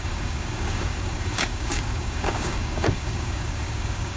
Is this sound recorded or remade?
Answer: remade